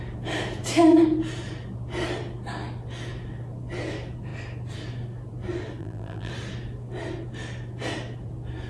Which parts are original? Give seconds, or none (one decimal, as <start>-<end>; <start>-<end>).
0.0-5.8; 6.3-8.7